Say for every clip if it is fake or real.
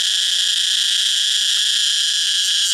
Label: real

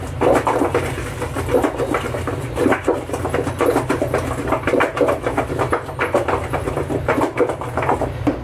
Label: real